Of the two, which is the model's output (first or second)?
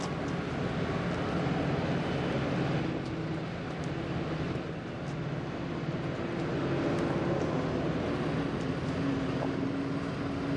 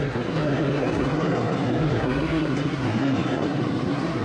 second